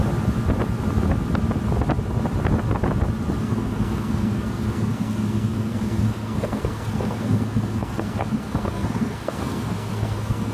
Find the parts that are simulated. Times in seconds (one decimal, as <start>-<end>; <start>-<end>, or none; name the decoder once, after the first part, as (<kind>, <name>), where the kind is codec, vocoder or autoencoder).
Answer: 3.4-10.5 (codec, SNAC)